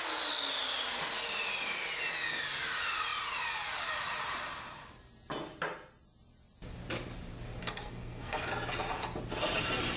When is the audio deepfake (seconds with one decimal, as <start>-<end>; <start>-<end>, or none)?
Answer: 7.6-8.5